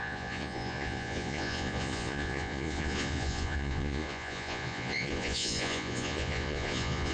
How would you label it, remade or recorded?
remade